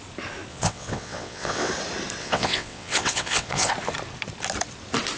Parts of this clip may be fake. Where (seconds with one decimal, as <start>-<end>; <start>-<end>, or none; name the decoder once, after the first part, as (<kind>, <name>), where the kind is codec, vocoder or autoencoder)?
0.5-1.7 (vocoder, WaveNeXt); 2.2-3.7